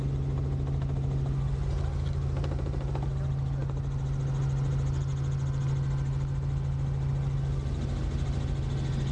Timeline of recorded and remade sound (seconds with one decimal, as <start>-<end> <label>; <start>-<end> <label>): 0.0-9.1 recorded